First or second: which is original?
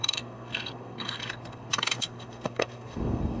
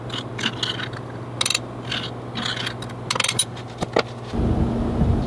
second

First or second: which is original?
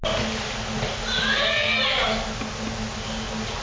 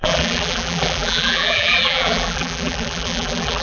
first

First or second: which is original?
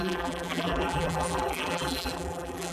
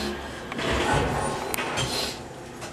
second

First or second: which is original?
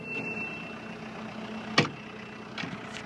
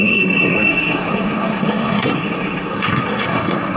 first